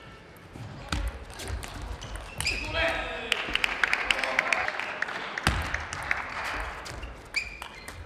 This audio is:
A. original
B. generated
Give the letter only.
A